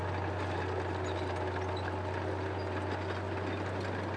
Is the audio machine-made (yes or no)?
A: no